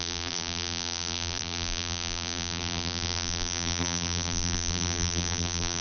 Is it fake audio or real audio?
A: fake